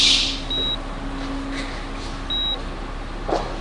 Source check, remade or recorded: recorded